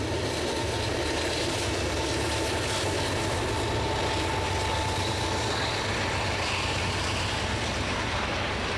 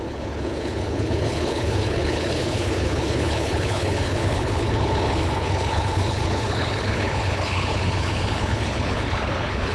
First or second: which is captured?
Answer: first